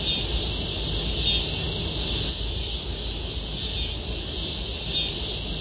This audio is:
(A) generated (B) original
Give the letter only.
B